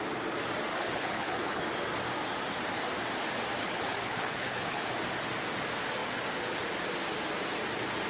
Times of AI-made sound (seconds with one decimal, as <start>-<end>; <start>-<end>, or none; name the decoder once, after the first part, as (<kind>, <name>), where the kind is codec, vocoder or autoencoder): 0.7-1.6 (codec, HILCodec); 3.6-4.9